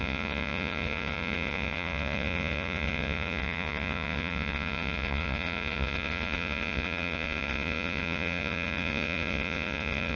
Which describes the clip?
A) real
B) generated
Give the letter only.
B